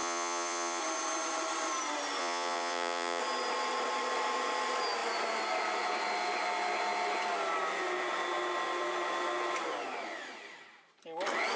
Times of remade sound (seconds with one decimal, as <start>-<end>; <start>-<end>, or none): 0.0-0.8; 2.2-3.2